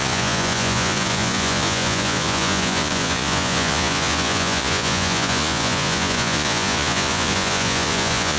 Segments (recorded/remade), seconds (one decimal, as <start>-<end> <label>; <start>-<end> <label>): 0.0-8.4 remade